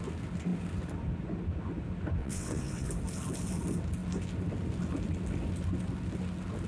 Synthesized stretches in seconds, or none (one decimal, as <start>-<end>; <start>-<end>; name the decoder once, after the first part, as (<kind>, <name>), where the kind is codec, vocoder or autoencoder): 2.2-2.9 (vocoder, WaveNeXt)